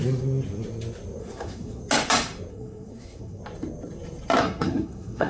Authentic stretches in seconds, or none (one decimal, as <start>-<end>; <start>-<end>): 0.0-1.2; 1.8-2.5; 3.4-4.4